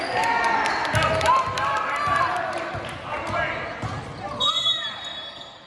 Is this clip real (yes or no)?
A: yes